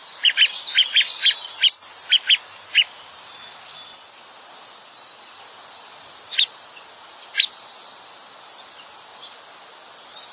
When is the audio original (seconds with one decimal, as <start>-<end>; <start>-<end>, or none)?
0.0-4.8; 5.4-10.3